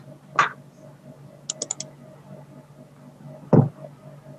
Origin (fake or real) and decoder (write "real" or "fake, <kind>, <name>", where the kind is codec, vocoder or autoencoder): real